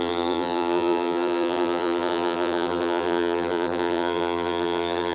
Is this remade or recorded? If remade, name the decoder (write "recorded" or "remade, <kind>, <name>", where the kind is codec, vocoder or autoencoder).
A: remade, vocoder, BigVGAN v2